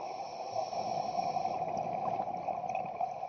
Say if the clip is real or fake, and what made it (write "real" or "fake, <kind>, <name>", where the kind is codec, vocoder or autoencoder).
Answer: real